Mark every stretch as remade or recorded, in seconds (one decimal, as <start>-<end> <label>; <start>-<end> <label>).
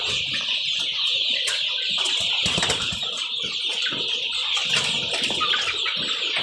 0.0-6.4 recorded